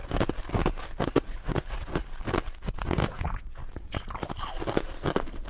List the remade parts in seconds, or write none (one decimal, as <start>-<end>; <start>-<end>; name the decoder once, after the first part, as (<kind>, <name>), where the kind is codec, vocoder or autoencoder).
1.0-2.0 (vocoder, Vocos); 2.8-3.6